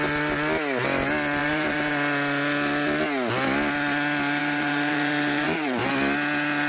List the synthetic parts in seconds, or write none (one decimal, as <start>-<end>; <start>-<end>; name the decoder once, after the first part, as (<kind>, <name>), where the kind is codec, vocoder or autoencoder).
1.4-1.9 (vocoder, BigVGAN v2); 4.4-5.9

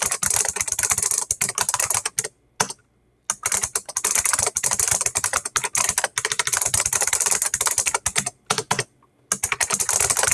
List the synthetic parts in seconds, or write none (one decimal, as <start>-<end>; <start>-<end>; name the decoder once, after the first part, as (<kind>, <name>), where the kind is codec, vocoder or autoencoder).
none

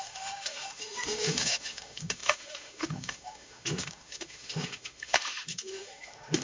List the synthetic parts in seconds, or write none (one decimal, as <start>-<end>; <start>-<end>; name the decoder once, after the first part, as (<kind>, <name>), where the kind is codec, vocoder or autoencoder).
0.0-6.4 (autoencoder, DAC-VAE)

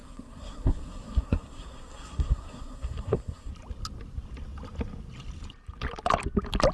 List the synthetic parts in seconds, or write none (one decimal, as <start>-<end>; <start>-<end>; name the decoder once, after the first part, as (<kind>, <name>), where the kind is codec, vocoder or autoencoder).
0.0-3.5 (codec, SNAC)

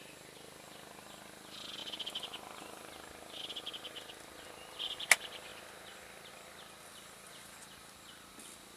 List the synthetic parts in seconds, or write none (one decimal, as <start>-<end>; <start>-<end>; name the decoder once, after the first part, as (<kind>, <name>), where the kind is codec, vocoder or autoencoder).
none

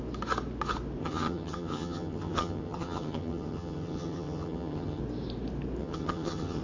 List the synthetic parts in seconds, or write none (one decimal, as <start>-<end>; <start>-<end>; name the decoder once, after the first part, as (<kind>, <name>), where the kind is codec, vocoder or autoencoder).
1.0-5.0 (vocoder, HiFi-GAN); 5.8-6.6

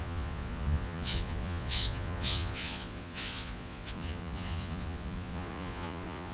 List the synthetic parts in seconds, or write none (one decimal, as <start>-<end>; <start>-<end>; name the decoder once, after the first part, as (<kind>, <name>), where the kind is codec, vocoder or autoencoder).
0.0-6.3 (vocoder, Vocos)